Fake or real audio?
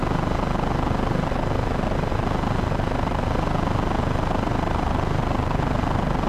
real